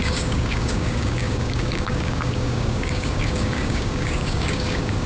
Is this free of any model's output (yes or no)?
no